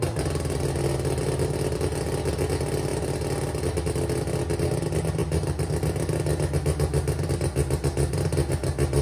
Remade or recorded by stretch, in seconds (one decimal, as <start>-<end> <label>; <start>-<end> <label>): 0.0-9.0 recorded